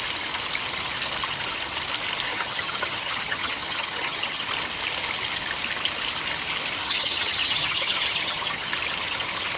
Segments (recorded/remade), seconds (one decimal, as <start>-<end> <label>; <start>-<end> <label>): 0.0-2.3 recorded; 2.3-4.5 remade; 4.5-6.8 recorded; 6.8-8.7 remade; 8.7-9.6 recorded